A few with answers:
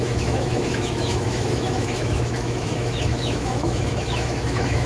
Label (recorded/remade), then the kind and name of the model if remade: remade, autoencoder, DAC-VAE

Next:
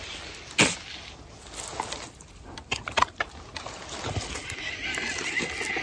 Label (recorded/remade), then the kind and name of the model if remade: recorded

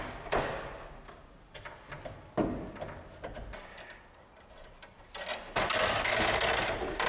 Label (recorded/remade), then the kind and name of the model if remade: recorded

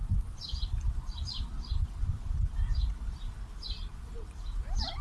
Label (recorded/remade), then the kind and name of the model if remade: remade, vocoder, BigVGAN v2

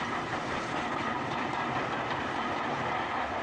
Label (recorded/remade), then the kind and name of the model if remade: recorded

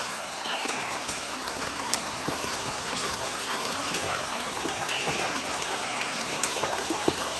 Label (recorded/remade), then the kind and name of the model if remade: remade, codec, SNAC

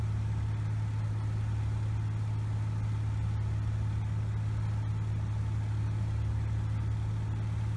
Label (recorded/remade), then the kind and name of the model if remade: recorded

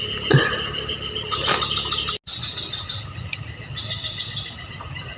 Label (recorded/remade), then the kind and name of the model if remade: recorded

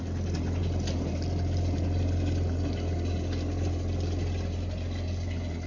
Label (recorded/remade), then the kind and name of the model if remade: recorded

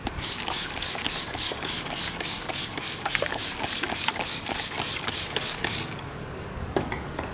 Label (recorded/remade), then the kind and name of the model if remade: remade, codec, DAC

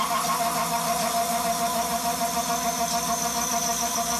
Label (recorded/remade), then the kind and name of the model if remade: recorded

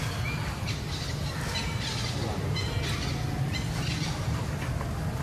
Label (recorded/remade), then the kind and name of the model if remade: recorded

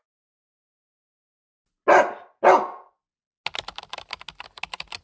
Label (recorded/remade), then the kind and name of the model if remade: recorded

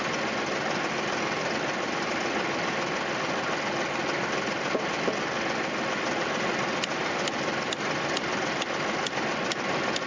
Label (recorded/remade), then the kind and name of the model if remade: recorded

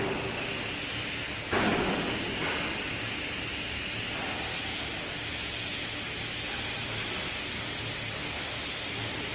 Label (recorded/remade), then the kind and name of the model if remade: recorded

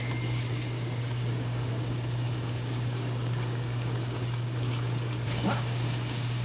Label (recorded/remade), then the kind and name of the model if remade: remade, codec, DAC